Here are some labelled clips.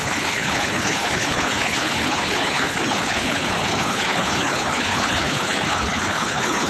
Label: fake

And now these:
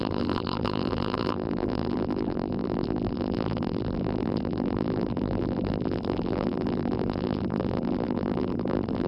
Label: fake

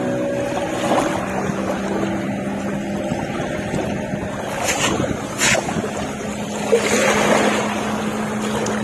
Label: real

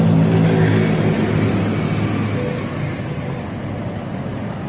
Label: real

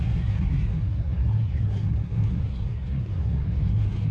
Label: fake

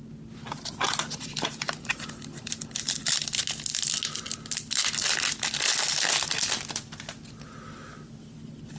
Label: real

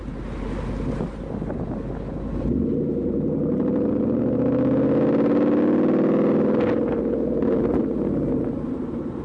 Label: real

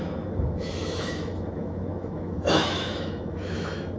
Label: fake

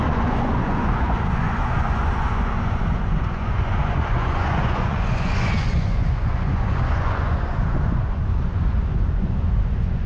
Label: fake